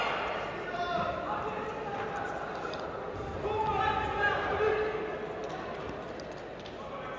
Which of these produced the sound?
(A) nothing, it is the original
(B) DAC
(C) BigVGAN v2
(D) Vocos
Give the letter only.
A